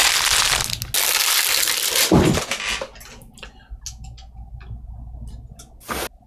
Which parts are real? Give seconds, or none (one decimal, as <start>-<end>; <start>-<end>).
0.0-6.3